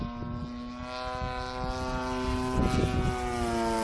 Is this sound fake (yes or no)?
no